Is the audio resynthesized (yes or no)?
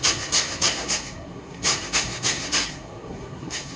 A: yes